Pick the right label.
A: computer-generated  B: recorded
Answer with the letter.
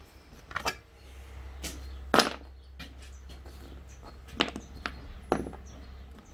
B